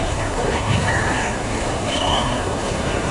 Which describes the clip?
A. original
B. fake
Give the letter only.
B